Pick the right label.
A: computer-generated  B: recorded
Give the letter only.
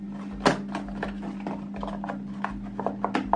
B